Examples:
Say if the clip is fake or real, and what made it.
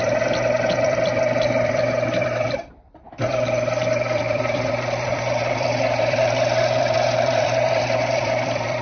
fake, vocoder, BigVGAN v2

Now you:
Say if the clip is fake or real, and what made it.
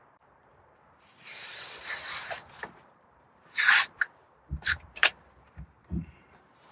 fake, vocoder, BigVGAN v2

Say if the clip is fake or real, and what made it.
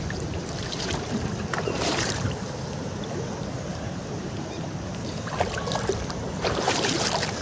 fake, vocoder, BigVGAN v2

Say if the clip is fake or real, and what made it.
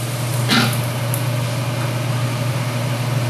real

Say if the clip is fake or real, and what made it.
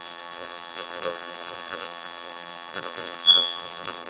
fake, vocoder, BigVGAN v2